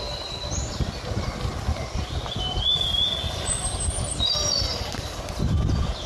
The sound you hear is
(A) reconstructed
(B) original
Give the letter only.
B